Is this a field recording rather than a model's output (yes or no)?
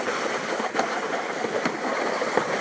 yes